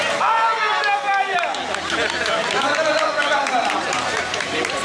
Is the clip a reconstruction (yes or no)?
no